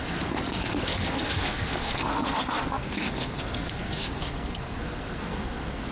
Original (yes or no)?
no